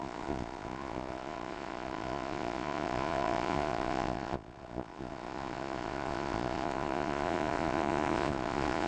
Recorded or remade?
remade